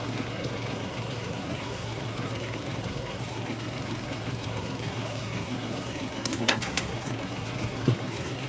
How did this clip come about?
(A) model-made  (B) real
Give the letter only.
A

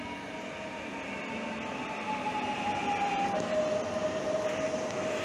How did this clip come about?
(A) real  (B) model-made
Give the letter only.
A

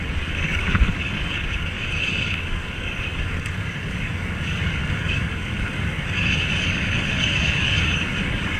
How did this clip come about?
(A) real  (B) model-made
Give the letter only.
B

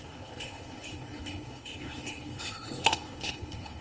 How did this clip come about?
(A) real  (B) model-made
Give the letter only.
B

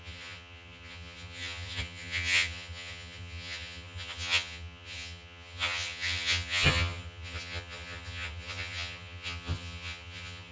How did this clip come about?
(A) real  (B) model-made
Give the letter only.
B